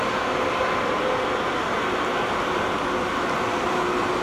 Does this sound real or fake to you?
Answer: real